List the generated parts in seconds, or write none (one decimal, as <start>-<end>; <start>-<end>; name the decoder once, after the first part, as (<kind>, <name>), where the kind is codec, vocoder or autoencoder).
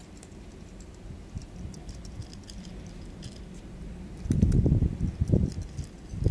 none